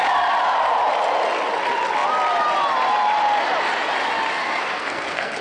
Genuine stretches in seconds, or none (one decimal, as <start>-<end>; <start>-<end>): 0.0-4.4